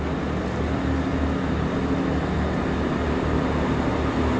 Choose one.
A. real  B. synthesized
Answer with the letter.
A